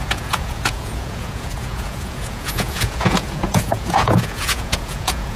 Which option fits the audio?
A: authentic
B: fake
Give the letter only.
B